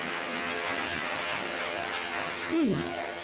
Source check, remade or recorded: remade